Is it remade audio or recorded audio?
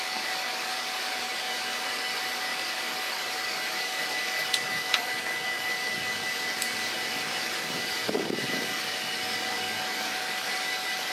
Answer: remade